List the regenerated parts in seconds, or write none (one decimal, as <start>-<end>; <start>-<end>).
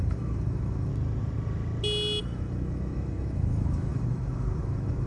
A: 0.0-0.9; 2.2-5.1